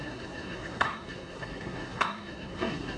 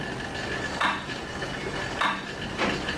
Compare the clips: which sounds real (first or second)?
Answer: second